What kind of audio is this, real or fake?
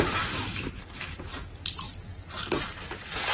fake